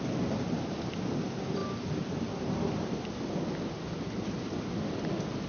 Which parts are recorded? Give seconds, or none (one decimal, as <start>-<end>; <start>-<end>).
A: 0.0-5.5